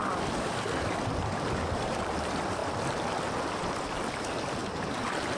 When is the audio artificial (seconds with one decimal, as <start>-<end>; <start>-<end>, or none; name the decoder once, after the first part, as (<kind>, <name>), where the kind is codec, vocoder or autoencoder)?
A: 1.6-2.6 (vocoder, BigVGAN v2); 4.1-5.4